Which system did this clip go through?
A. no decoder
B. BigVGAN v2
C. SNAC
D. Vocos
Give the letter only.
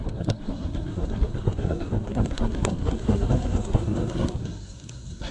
C